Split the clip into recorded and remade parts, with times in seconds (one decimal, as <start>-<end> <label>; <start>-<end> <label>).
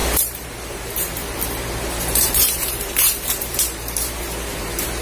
0.0-1.2 remade; 1.2-2.0 recorded; 2.0-5.0 remade